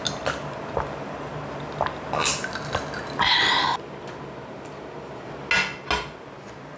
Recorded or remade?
recorded